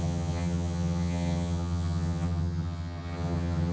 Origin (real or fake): fake